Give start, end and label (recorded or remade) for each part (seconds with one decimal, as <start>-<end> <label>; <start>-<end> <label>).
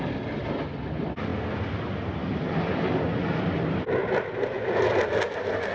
0.0-5.7 recorded